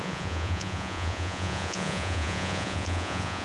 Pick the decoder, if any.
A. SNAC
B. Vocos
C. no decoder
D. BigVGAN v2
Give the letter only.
B